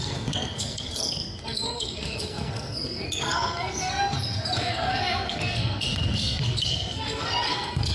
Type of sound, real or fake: fake